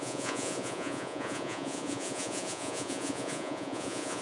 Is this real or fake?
fake